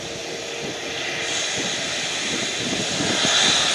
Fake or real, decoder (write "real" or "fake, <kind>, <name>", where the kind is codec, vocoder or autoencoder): real